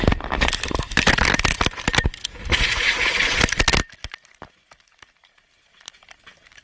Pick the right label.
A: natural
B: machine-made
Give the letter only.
A